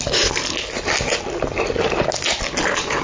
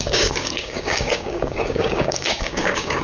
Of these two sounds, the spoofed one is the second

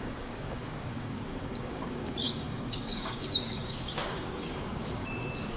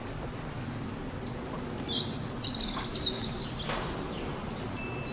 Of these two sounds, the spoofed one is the first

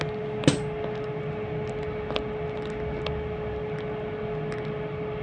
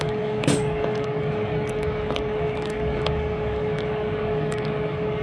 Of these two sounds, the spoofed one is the second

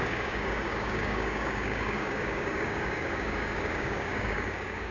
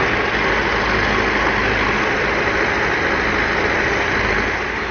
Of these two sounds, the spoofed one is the first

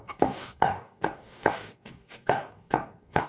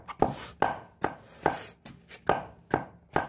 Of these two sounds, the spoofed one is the first